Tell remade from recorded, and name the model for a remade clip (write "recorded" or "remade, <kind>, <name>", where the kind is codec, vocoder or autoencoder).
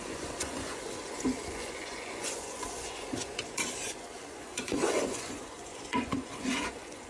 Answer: remade, vocoder, Vocos